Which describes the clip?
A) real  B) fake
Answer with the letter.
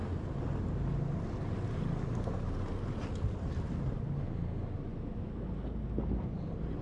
A